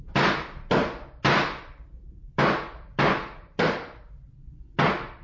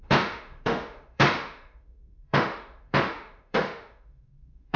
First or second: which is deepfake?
second